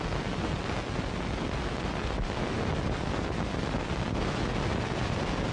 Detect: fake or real real